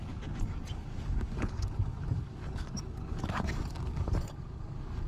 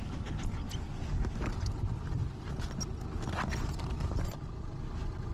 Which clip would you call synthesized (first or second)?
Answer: first